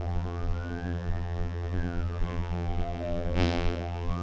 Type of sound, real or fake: fake